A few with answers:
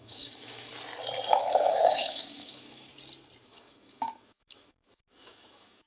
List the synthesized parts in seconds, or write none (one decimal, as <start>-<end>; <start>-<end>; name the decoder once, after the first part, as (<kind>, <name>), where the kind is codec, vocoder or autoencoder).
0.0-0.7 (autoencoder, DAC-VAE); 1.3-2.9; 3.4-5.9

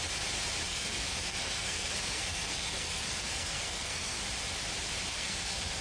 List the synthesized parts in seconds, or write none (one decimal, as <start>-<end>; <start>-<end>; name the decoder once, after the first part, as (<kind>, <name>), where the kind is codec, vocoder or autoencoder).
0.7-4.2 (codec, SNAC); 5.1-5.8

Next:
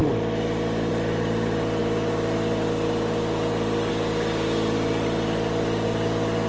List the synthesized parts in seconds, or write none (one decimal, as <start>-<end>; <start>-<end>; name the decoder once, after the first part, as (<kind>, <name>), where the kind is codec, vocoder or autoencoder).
none

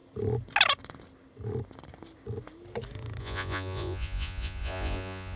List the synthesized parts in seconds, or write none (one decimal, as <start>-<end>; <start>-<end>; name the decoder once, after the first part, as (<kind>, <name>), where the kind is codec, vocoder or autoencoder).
3.2-5.4 (vocoder, Vocos)

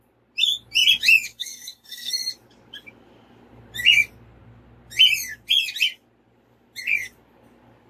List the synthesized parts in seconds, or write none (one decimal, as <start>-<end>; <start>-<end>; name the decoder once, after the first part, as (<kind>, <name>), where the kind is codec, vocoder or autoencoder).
1.3-2.1 (codec, SNAC)

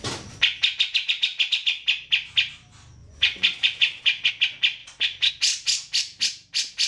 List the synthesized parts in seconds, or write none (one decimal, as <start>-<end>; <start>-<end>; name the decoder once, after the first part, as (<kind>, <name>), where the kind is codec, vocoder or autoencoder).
3.0-4.3 (vocoder, Vocos); 4.8-5.3

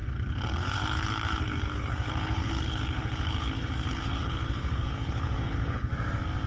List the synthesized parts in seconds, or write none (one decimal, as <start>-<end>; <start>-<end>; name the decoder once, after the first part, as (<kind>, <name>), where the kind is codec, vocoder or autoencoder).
0.0-5.9 (codec, HILCodec)